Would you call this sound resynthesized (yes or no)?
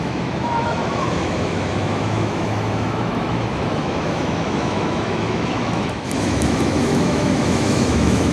yes